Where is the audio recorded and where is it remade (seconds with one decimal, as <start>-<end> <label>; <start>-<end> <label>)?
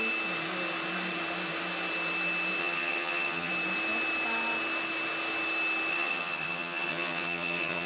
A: 0.0-2.6 recorded; 2.6-3.5 remade; 3.5-5.9 recorded; 5.9-7.9 remade